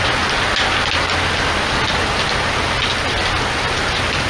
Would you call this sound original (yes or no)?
yes